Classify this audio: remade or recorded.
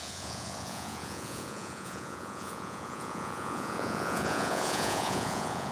remade